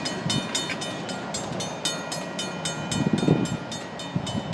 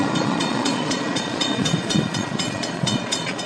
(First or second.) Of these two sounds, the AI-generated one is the second